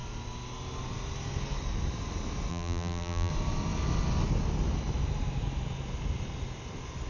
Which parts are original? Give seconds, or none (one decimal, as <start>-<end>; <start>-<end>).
0.0-2.5; 3.3-7.1